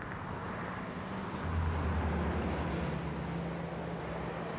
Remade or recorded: recorded